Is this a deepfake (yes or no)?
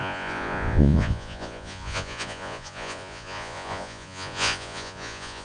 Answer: yes